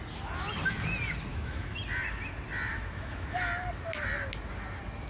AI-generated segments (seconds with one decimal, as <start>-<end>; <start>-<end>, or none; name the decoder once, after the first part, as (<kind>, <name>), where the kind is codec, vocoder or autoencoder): 1.3-1.8 (autoencoder, DAC-VAE); 2.7-3.5